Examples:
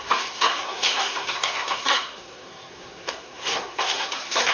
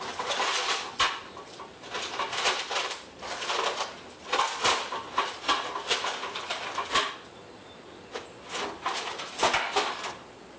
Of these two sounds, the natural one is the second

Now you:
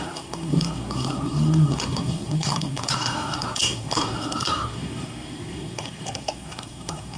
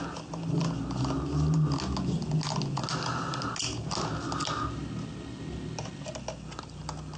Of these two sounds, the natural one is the second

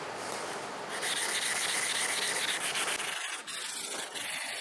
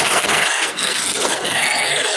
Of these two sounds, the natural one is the first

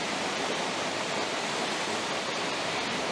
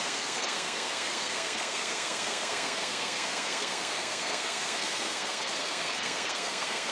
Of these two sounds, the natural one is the first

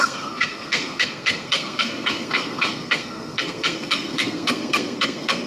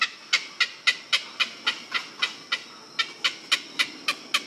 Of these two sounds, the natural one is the second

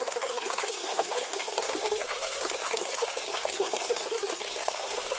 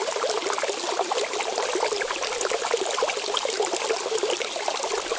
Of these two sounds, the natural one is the second